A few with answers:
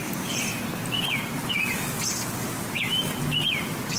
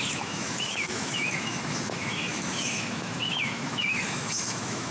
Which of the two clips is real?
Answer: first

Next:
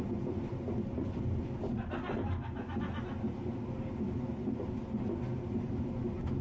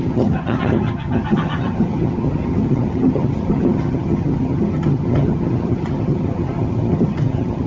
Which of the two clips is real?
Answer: first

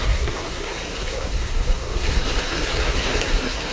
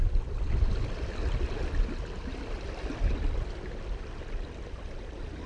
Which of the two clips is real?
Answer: second